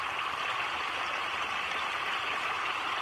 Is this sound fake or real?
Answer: real